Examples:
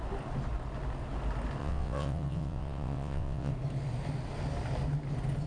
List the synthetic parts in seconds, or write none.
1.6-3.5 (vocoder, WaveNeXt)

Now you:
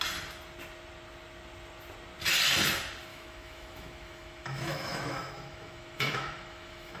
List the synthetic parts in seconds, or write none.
3.1-7.0 (autoencoder, DAC-VAE)

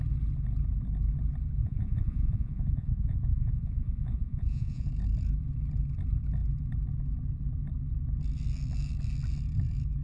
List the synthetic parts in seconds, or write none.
1.6-4.9 (vocoder, Vocos)

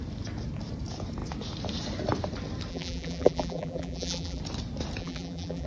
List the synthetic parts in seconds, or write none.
2.7-4.4 (vocoder, BigVGAN v2); 5.0-5.7

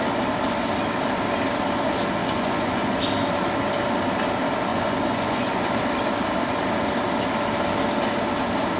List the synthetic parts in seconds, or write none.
2.2-3.0 (vocoder, Vocos); 4.7-5.7

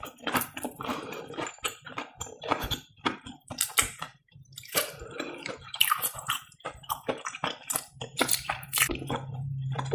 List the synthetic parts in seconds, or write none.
0.0-9.9 (vocoder, BigVGAN v2)

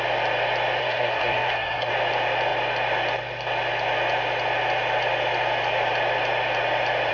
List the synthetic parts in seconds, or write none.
0.8-1.9 (codec, SNAC)